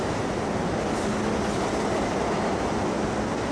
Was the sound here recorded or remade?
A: recorded